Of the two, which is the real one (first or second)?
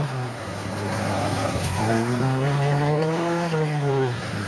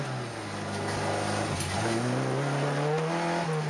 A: second